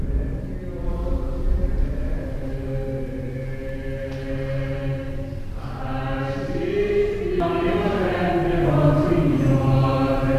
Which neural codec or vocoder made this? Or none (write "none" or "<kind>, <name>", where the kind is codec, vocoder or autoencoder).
none